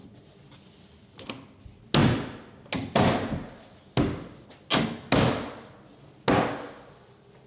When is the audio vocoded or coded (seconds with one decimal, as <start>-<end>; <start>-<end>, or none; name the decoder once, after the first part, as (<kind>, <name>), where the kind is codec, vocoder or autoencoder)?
0.0-1.3 (vocoder, BigVGAN v2)